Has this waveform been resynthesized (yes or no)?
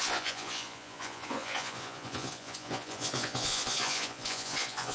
yes